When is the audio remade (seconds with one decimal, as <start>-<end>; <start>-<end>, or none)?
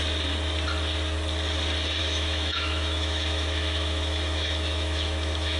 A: 2.0-5.6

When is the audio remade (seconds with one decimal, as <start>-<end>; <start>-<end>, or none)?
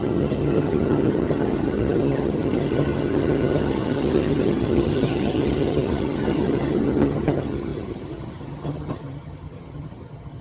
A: 0.0-10.4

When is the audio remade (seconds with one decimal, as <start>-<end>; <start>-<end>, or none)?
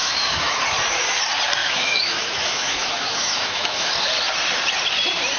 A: 0.0-0.6; 1.6-3.9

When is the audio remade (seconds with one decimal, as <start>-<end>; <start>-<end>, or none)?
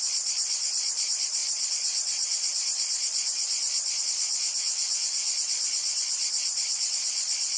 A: 0.0-4.4; 5.3-7.6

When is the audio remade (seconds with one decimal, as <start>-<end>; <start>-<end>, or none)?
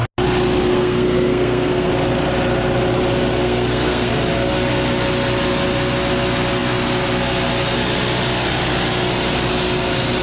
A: 0.7-1.9; 3.4-4.1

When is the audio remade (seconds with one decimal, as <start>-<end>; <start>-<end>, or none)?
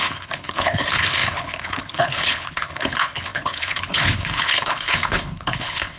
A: 0.0-6.0